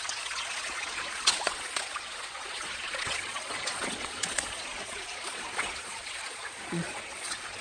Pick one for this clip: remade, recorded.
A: remade